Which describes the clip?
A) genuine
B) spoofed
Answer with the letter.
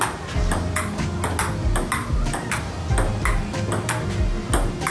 A